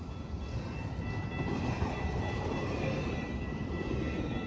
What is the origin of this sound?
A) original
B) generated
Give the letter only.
B